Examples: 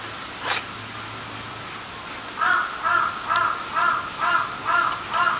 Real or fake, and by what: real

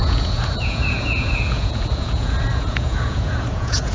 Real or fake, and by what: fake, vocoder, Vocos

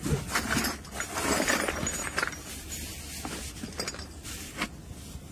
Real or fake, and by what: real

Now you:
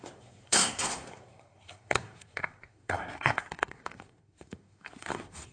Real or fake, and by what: fake, codec, SNAC